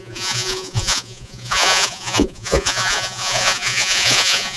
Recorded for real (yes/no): no